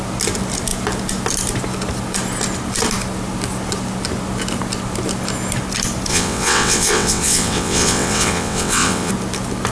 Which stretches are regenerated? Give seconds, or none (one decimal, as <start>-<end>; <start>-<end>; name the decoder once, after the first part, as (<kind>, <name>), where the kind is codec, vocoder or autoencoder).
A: 6.1-9.1 (vocoder, WaveNeXt)